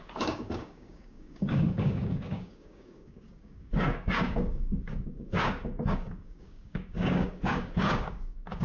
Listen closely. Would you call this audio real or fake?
fake